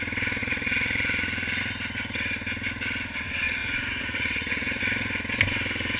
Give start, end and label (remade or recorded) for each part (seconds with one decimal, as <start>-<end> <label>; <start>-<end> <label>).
0.0-0.4 recorded; 0.4-1.6 remade; 1.6-3.6 recorded; 3.6-4.8 remade; 4.8-6.0 recorded